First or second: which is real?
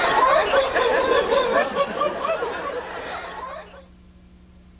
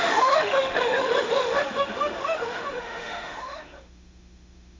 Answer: first